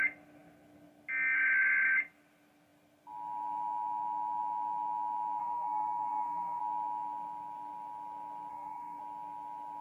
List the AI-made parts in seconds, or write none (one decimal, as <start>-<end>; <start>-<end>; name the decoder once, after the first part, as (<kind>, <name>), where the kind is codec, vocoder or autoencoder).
5.4-6.6 (codec, SNAC); 8.5-9.0